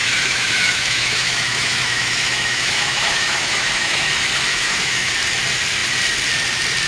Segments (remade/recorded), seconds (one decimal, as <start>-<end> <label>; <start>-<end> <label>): 0.0-4.1 remade; 4.1-4.5 recorded; 4.5-5.1 remade; 5.1-6.9 recorded